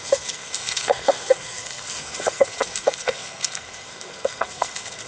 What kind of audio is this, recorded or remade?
remade